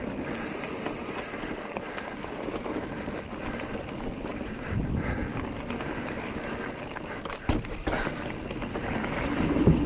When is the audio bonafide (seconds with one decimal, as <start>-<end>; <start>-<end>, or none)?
0.0-9.9